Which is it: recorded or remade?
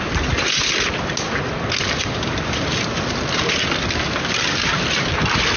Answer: recorded